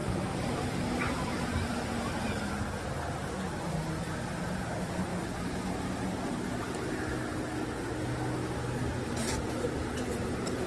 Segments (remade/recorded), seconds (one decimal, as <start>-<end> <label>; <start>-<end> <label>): 0.0-2.5 remade; 2.5-10.7 recorded